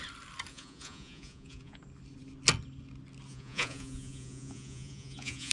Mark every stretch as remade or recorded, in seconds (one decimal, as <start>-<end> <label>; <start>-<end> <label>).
0.0-0.5 recorded; 0.5-1.8 remade; 1.8-3.3 recorded; 3.3-5.5 remade